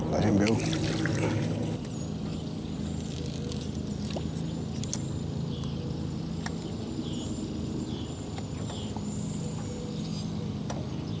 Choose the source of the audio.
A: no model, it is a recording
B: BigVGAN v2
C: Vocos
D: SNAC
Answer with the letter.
A